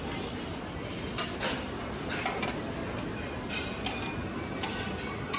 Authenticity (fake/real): real